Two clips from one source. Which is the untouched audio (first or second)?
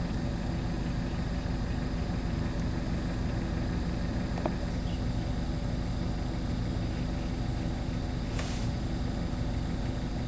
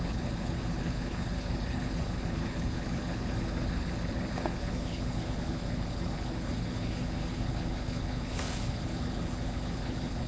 first